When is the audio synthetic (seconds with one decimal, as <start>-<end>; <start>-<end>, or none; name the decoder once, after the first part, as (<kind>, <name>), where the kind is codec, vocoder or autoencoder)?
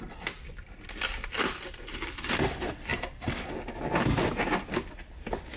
none